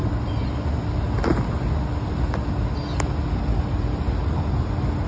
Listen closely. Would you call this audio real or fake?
real